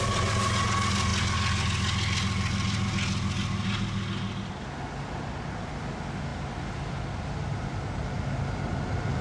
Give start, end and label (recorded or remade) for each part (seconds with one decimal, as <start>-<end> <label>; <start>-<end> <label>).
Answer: 0.0-9.2 recorded